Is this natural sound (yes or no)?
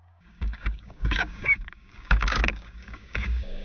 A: no